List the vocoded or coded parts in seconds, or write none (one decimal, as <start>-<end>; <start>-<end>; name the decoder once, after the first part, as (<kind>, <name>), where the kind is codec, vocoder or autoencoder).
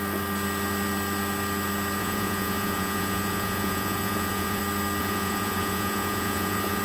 2.0-4.6 (vocoder, Vocos); 5.0-6.8